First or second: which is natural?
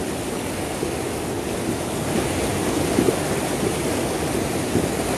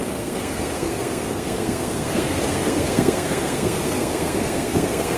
first